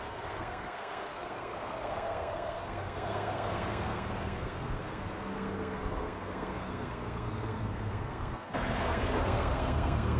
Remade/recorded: remade